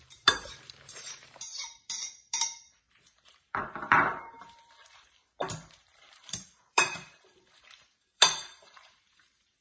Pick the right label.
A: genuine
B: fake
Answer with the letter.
B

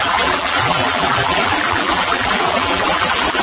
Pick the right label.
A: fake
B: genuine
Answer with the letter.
A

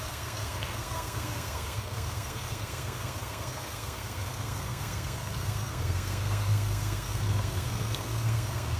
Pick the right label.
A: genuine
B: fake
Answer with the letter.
B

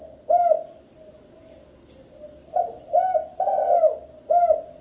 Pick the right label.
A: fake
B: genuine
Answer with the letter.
B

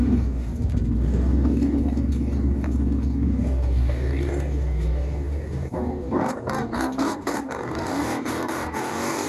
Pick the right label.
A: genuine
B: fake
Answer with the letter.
B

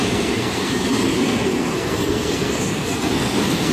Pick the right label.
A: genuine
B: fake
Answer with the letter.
B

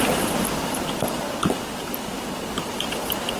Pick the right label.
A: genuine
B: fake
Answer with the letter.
A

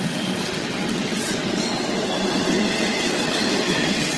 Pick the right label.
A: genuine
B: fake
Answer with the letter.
B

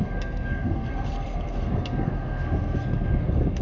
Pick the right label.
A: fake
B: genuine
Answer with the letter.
A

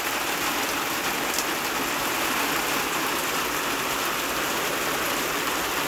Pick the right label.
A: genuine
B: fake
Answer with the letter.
B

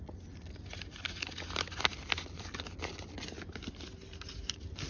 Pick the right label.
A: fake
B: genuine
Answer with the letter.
B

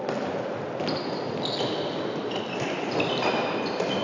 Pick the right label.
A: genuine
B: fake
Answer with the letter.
A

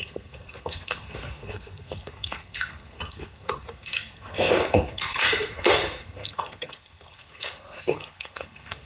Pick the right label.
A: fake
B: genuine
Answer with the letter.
A